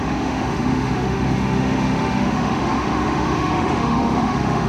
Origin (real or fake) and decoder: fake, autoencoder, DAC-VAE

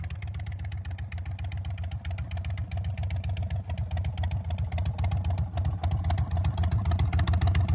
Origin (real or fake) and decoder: real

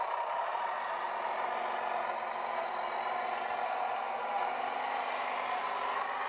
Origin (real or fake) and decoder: real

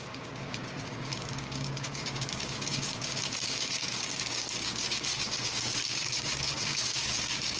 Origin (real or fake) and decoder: fake, codec, DAC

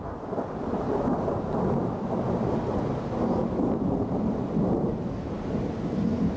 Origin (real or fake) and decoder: real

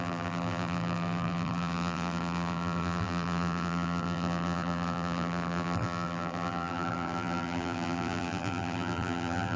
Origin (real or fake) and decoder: fake, vocoder, BigVGAN v2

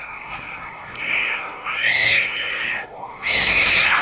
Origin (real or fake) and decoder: fake, codec, SNAC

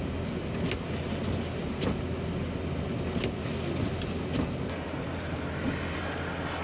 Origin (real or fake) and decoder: real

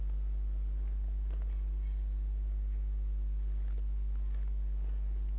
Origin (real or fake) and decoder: real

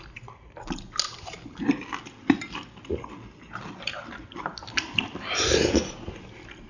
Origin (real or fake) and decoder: real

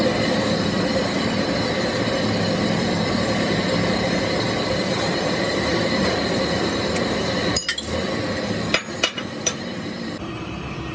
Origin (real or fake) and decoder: fake, vocoder, BigVGAN v2